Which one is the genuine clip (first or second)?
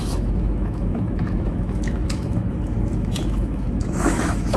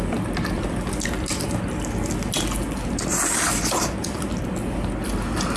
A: second